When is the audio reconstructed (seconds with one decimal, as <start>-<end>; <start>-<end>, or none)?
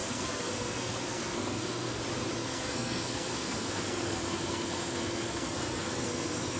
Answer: 0.0-2.0; 2.4-6.6